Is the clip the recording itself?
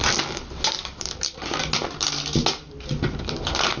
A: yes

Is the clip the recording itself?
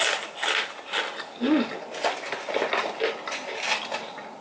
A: yes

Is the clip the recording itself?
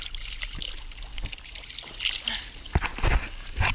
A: yes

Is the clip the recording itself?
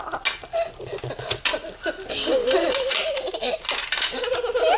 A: yes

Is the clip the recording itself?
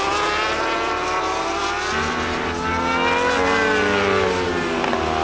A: yes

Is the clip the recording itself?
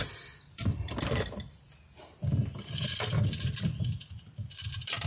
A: no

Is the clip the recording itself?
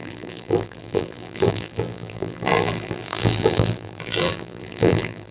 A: no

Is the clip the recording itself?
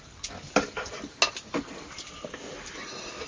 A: yes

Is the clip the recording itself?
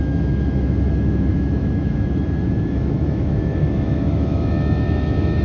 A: no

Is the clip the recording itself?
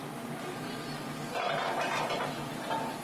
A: yes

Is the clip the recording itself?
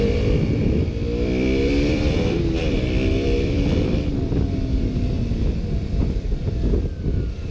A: no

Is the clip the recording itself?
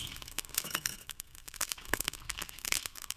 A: no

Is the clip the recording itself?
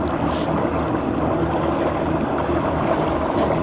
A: yes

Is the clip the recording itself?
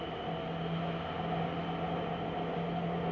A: yes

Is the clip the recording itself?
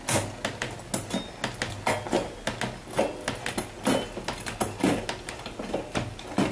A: yes